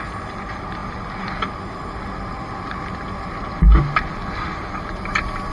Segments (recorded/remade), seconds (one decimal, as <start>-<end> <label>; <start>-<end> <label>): 0.0-5.5 recorded

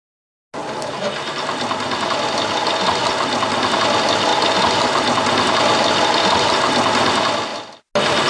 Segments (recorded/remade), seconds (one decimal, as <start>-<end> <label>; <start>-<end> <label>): 0.0-8.3 recorded

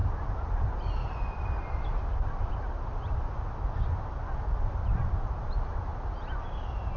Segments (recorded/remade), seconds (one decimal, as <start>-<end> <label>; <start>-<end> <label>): 0.0-7.0 recorded

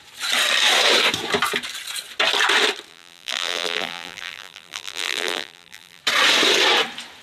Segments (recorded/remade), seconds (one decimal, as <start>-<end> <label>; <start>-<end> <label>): 0.0-2.9 recorded; 2.9-6.0 remade; 6.0-7.2 recorded

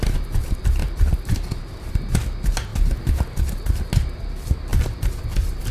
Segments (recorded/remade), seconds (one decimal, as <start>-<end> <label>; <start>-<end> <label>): 0.0-0.8 recorded; 0.8-1.9 remade; 1.9-4.7 recorded; 4.7-5.7 remade

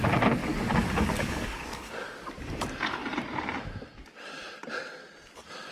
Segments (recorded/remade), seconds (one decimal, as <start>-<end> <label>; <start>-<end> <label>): 0.0-0.4 recorded; 0.4-2.3 remade; 2.3-5.7 recorded